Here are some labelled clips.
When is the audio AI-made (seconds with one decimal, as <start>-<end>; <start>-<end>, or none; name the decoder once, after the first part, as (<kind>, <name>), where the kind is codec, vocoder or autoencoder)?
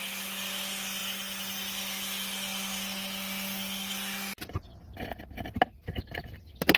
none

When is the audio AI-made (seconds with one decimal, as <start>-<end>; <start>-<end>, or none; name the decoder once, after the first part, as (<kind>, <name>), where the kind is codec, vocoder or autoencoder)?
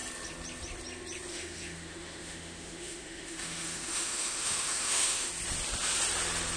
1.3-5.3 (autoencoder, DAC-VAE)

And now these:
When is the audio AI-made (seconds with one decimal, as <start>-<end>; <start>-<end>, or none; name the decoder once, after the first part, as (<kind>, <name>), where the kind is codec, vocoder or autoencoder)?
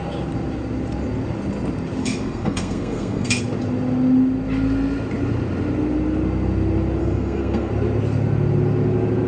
2.0-3.4 (codec, SNAC); 7.0-7.7